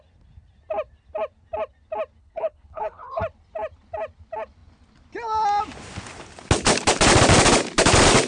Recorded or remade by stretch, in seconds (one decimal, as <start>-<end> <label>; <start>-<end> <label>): 0.0-2.2 recorded; 2.2-3.2 remade; 3.2-8.3 recorded